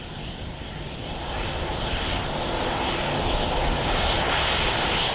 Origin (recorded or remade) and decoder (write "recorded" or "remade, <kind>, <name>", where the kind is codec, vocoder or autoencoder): recorded